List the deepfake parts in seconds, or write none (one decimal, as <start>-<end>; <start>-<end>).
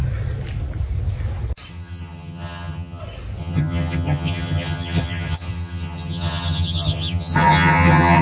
1.7-3.0; 3.4-8.2